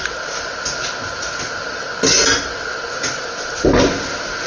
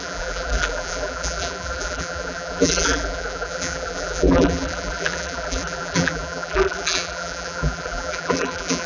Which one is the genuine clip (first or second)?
first